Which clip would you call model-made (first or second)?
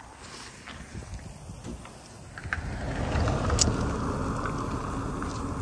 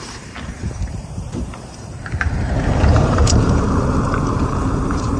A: second